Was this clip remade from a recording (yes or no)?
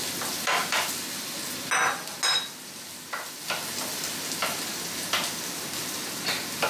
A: no